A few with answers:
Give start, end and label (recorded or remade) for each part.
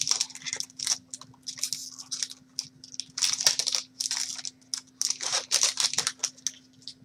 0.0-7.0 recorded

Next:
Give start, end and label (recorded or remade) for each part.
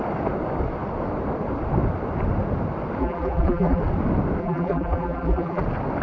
0.0-3.0 recorded; 3.0-3.8 remade; 3.8-4.4 recorded; 4.4-5.6 remade; 5.6-6.0 recorded